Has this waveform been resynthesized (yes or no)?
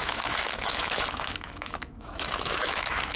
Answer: yes